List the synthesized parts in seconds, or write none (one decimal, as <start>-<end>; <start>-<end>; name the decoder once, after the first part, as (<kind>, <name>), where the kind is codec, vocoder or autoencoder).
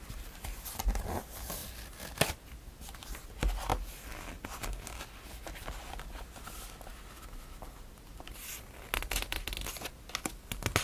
none